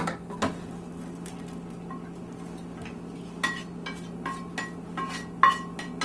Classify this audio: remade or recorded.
recorded